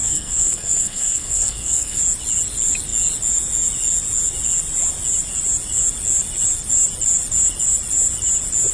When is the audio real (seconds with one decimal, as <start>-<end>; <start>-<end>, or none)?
2.0-8.7